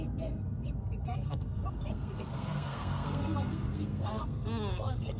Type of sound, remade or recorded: remade